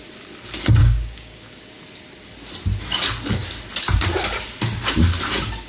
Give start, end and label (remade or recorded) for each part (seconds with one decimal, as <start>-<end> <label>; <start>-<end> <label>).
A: 0.0-0.8 recorded; 0.8-1.7 remade; 1.7-5.7 recorded